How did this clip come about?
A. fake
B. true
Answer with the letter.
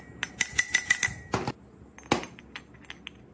B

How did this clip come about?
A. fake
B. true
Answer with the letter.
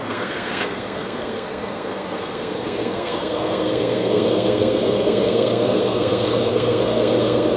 A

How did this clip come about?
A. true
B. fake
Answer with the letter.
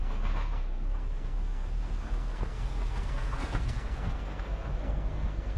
B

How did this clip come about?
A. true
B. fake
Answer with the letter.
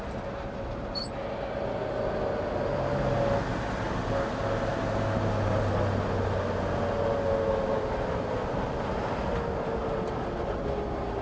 A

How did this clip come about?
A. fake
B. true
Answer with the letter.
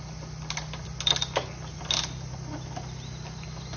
B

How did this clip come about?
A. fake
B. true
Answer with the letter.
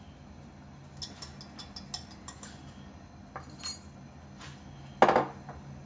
B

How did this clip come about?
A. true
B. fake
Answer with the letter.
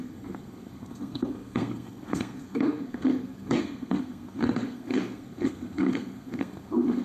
B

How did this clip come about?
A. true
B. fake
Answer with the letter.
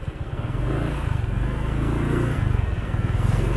B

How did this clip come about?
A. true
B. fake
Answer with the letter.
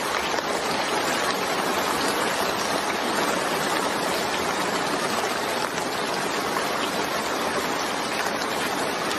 A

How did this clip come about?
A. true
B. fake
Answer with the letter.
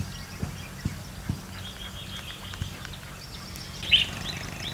A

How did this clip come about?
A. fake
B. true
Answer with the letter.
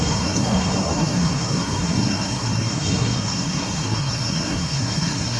A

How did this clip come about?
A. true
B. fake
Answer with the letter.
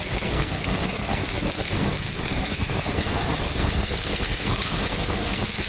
B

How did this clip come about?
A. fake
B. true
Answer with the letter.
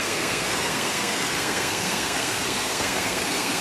A